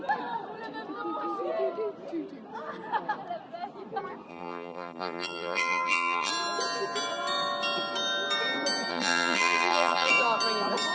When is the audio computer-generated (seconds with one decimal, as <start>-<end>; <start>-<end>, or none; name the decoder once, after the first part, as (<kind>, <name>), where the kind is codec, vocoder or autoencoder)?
4.3-6.3 (vocoder, BigVGAN v2); 8.9-10.1